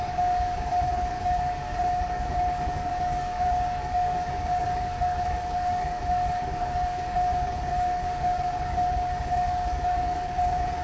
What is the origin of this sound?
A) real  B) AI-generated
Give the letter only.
B